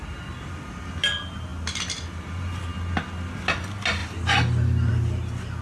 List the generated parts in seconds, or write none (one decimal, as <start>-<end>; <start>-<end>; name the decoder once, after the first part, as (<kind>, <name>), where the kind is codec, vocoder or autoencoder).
none